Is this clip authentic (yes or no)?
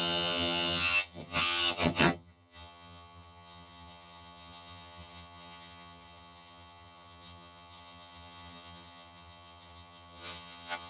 no